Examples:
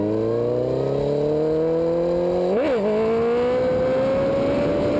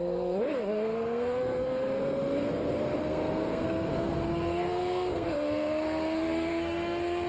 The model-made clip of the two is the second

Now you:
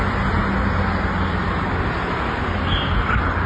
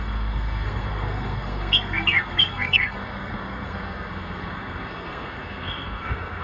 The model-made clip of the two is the second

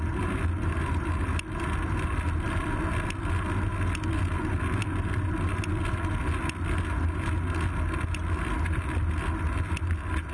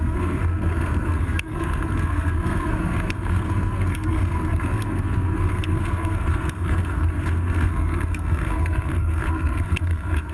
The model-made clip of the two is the second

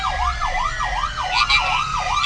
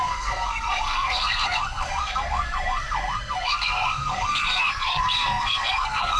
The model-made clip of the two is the second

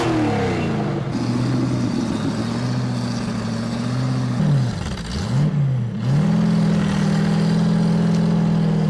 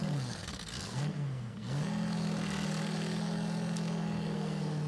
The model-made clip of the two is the second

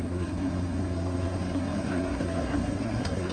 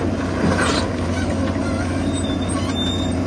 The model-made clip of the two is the first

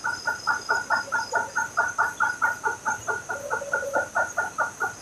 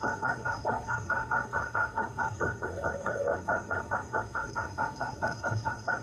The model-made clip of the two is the second